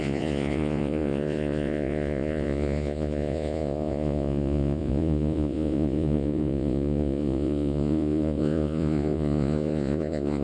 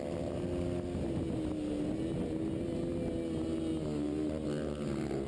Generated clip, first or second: first